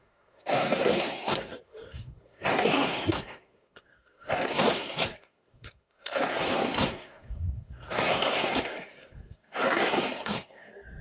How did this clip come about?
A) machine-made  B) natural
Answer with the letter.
A